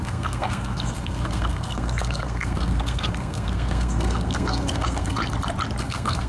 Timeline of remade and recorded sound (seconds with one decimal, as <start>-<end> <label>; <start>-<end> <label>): 0.0-5.2 remade; 5.2-5.8 recorded; 5.8-6.3 remade